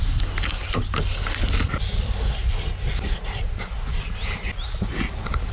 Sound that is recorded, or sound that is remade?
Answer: recorded